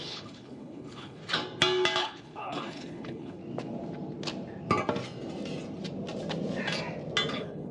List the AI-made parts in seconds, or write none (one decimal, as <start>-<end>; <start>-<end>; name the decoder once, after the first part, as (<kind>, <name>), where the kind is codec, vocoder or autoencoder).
0.0-1.2 (codec, HILCodec); 2.0-3.4; 7.3-7.7